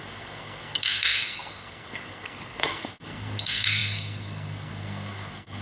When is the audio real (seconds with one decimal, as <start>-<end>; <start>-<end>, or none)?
none

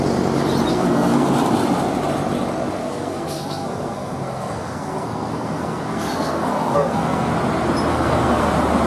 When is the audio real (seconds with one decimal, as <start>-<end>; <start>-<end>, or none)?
0.0-0.7; 1.3-2.8; 7.3-7.9; 8.5-8.9